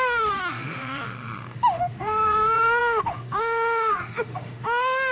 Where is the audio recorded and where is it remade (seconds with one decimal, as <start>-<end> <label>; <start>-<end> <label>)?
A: 0.0-5.1 remade